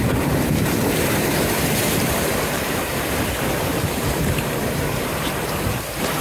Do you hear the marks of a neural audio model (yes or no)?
yes